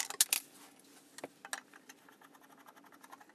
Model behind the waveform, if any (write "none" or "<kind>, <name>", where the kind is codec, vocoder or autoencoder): none